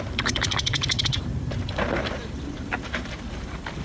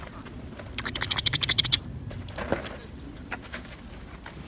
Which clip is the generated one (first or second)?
first